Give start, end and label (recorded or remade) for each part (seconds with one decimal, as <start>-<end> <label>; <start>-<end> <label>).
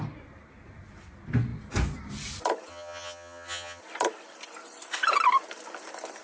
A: 0.0-2.7 recorded; 2.7-3.8 remade; 3.8-6.2 recorded